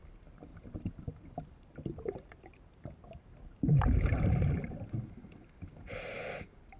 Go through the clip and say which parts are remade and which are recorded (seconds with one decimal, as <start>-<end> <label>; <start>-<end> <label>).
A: 0.0-0.5 recorded; 0.5-4.2 remade; 4.2-6.8 recorded